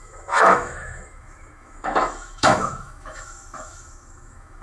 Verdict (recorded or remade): remade